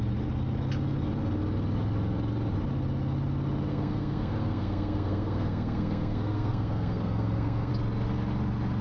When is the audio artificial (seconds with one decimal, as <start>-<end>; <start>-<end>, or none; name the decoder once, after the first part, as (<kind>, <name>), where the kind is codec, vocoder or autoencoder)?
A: 3.7-7.7 (codec, SNAC)